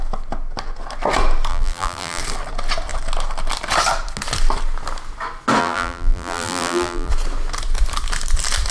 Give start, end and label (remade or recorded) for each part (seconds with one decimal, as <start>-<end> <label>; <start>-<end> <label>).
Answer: 0.0-1.5 recorded; 1.5-2.2 remade; 2.2-5.6 recorded; 5.6-7.1 remade; 7.1-8.7 recorded